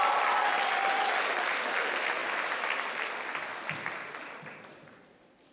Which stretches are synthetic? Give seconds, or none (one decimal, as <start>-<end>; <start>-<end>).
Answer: none